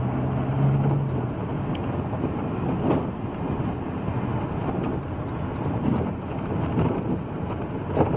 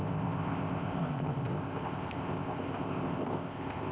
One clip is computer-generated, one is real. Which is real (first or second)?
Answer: first